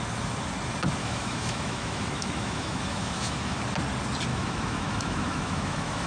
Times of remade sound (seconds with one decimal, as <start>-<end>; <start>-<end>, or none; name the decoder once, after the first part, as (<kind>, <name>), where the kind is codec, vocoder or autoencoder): 1.0-3.6 (autoencoder, DAC-VAE); 4.3-6.1